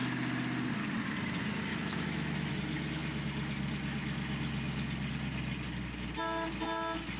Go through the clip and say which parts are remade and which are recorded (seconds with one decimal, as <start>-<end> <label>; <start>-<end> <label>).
0.0-1.7 recorded; 1.7-2.5 remade; 2.5-7.2 recorded